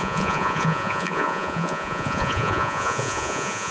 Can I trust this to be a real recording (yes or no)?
no